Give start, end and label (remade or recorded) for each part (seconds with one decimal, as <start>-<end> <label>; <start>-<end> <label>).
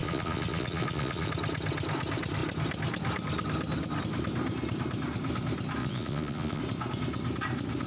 0.0-1.3 remade; 1.3-5.8 recorded; 5.8-6.6 remade; 6.6-7.9 recorded